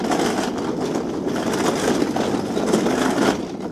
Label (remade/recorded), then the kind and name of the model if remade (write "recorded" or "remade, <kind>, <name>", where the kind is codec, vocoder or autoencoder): recorded